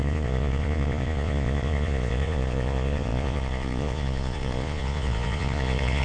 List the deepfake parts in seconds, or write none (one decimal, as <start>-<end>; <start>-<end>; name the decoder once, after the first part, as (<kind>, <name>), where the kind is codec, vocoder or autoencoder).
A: 0.0-6.0 (vocoder, Vocos)